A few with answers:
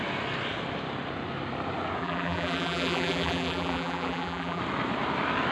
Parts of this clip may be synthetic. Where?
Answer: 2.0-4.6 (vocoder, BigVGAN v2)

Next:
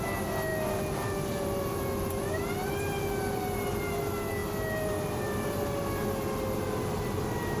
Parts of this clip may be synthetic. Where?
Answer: none